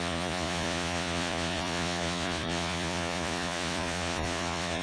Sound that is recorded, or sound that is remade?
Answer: remade